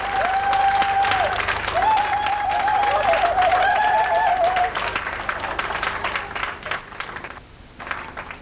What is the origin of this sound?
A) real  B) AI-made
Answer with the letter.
A